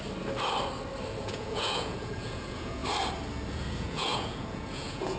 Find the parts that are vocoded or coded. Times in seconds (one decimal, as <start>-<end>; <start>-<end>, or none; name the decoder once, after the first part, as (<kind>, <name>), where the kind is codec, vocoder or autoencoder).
1.2-2.8 (vocoder, Vocos); 3.5-5.2